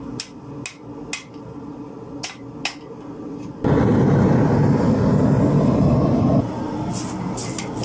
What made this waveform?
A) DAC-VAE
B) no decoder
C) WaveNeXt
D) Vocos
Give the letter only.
B